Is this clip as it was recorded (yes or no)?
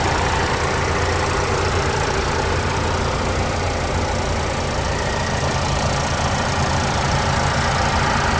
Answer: yes